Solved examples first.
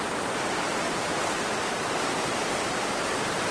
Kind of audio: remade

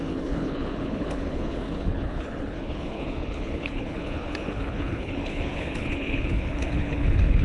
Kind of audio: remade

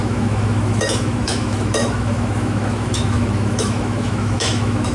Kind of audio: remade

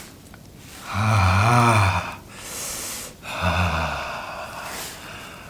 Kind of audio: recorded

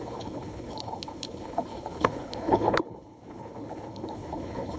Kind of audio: remade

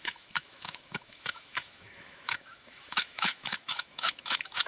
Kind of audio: remade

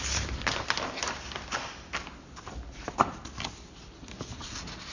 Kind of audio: recorded